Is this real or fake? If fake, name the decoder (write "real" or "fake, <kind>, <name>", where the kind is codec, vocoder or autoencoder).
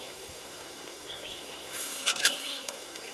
fake, codec, SNAC